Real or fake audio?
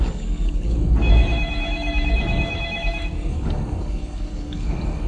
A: fake